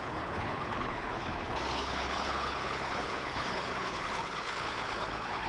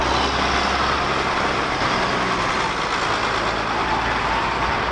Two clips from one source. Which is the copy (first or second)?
first